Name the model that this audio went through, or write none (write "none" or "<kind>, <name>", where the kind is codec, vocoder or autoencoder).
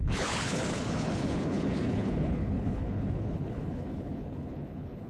codec, HILCodec